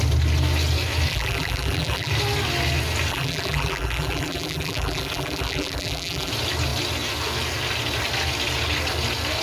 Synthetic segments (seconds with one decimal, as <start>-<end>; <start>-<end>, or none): 1.1-2.1; 3.1-6.3

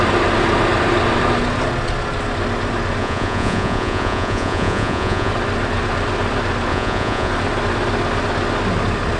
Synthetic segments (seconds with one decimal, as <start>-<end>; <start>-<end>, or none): 3.0-5.3; 6.7-7.3